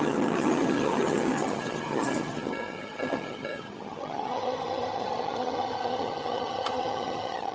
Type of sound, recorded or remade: remade